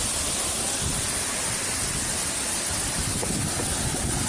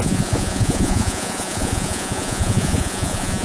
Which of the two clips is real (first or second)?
first